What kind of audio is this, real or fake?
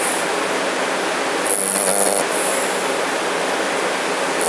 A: real